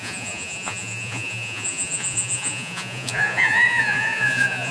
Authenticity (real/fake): fake